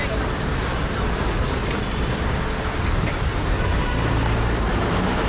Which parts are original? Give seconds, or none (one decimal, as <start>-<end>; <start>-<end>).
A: 0.0-1.6; 2.1-3.7